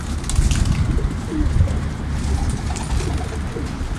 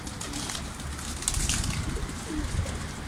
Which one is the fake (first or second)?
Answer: second